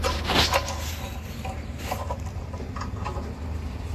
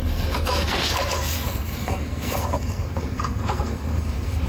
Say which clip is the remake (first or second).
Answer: second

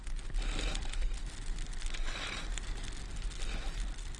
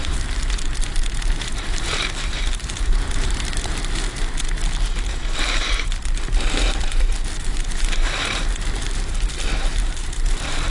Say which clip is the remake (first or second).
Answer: second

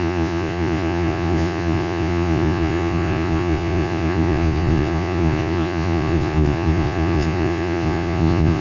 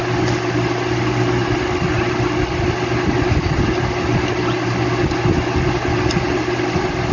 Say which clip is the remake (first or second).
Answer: first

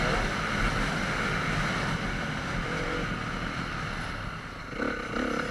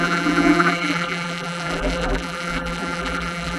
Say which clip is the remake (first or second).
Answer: second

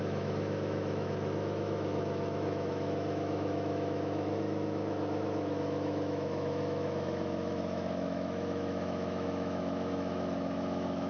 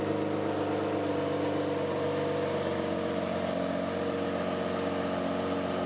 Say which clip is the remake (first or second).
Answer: first